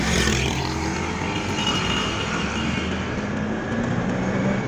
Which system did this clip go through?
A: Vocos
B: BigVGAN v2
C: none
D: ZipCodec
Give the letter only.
C